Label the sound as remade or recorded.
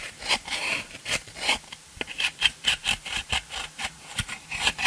remade